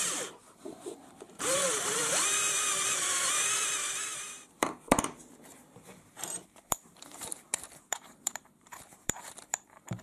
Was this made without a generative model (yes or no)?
no